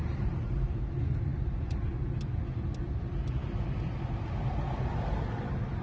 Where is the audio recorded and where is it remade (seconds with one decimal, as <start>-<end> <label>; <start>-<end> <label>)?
0.0-0.9 remade; 0.9-5.8 recorded